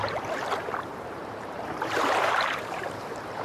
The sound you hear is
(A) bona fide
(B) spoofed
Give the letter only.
B